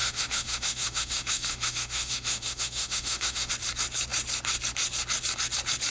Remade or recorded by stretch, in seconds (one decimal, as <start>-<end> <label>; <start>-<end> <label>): 0.0-3.5 remade; 3.5-5.9 recorded